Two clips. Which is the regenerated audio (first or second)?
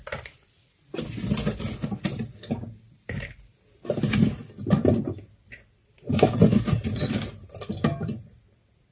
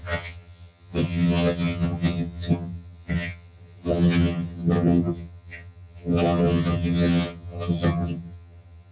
second